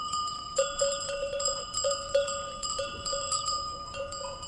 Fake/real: fake